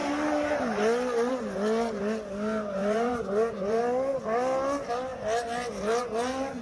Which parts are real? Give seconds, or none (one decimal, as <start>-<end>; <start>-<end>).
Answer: 0.0-2.8; 3.8-6.6